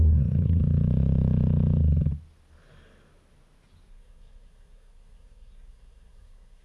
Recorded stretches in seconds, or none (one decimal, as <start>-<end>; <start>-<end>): 0.6-3.9